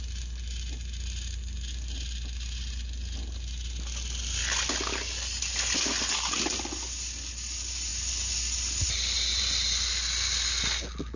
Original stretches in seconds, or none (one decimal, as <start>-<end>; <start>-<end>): 0.0-11.2